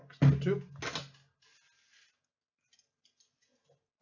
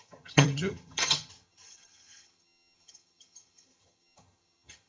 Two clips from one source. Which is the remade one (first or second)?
second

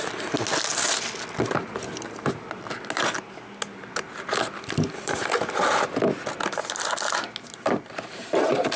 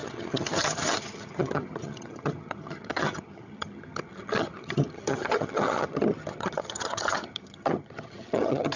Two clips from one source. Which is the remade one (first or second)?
second